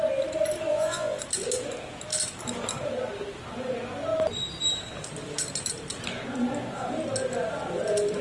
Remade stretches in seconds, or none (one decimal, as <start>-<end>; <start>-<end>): 0.7-1.2